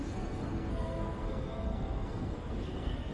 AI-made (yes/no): yes